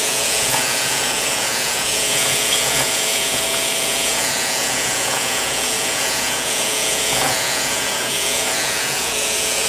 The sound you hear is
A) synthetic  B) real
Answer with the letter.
A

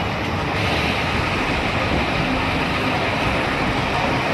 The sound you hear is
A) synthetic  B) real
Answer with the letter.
B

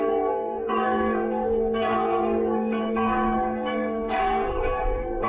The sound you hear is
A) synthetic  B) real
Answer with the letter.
A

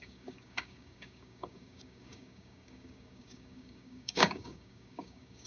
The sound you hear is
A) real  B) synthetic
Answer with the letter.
B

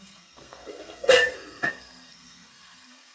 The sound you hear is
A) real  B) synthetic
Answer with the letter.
B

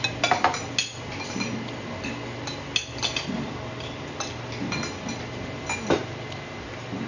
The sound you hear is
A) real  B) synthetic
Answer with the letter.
A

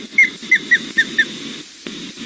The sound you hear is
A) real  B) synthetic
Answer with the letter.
A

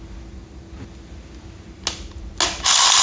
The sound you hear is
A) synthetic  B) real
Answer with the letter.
B